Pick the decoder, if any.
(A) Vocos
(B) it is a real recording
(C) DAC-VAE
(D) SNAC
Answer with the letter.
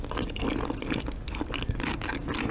B